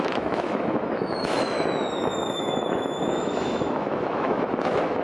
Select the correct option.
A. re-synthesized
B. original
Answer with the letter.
A